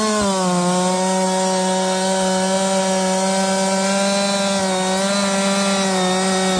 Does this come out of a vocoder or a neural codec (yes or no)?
no